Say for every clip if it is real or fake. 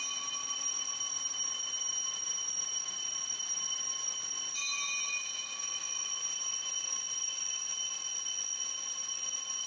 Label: real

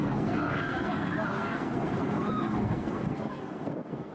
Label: fake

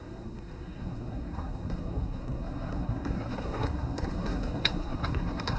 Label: fake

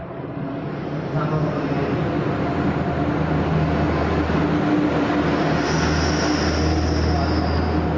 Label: real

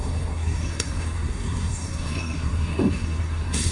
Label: fake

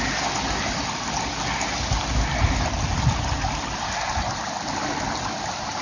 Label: real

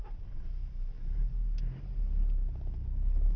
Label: real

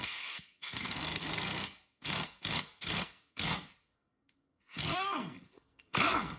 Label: fake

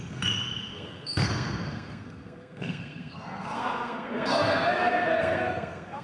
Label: fake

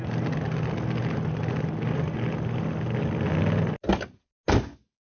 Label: real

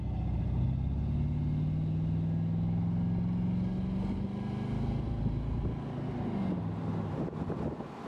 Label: real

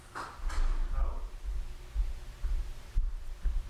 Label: real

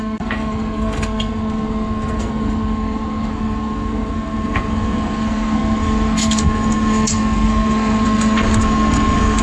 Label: fake